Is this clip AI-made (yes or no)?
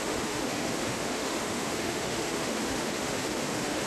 yes